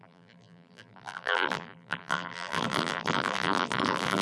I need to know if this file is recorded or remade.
remade